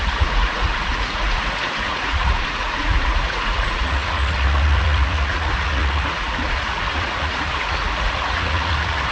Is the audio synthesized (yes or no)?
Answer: yes